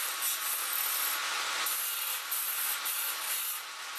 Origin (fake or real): real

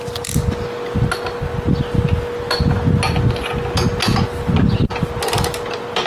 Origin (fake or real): real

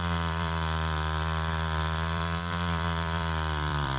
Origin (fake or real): fake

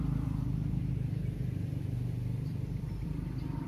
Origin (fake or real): fake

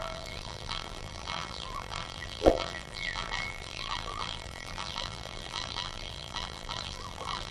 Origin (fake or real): fake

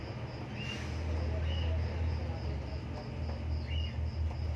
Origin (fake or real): real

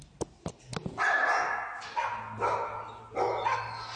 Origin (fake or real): real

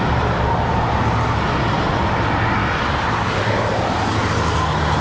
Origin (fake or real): real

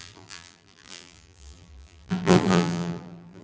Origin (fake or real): fake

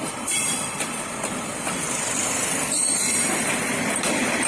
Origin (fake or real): fake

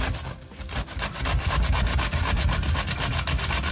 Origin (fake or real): real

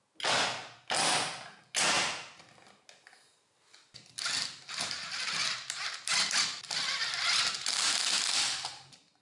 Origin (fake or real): real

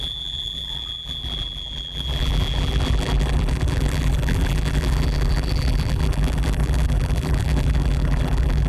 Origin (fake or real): fake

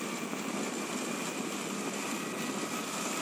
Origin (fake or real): real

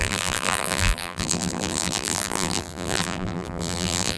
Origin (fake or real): fake